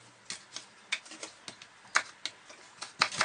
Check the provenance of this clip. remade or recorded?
recorded